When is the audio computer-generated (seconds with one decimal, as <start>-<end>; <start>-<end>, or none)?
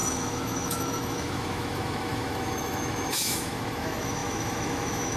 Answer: 0.0-5.2